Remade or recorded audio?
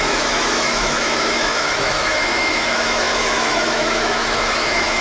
remade